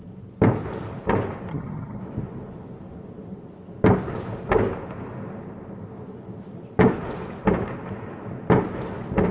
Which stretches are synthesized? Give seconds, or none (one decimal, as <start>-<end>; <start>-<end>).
1.5-2.0